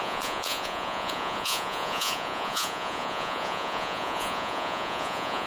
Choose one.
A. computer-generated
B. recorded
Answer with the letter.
A